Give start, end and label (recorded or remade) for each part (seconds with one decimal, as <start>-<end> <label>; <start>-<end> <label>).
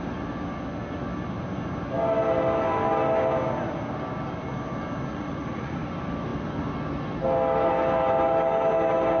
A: 0.0-5.1 recorded; 5.1-5.8 remade; 5.8-9.2 recorded